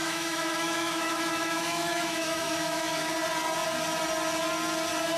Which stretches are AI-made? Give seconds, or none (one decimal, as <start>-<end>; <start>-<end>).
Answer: 0.0-3.1